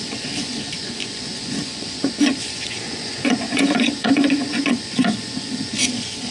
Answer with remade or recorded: remade